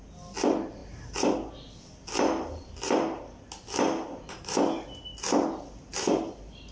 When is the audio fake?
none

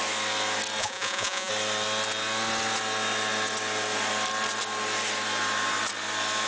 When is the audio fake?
0.8-1.5 (vocoder, Vocos)

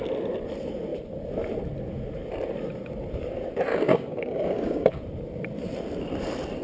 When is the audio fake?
3.7-5.0 (codec, DAC)

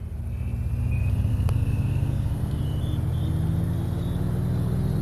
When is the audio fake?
1.3-2.6 (codec, SNAC)